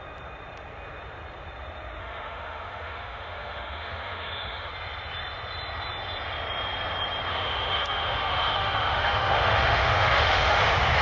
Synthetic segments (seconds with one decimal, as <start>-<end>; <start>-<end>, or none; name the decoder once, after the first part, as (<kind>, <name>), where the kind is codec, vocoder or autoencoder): 2.0-4.7 (autoencoder, DAC-VAE); 7.3-10.6